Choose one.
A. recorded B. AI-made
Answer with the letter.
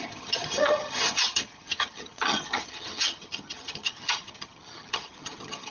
B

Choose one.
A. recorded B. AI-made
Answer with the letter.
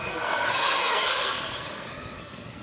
B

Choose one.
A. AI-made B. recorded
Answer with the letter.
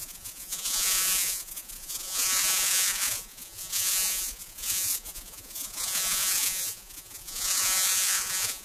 A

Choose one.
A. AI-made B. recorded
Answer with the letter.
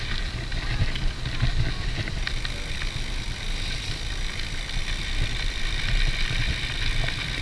B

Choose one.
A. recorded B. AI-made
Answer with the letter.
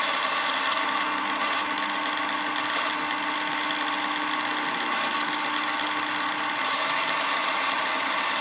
A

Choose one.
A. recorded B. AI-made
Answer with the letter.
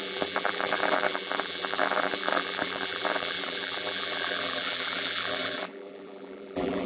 B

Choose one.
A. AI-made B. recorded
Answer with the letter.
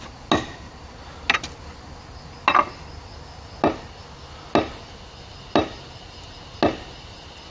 B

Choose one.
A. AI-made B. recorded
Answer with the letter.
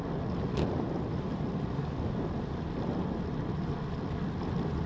B